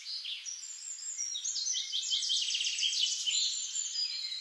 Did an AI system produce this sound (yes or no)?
no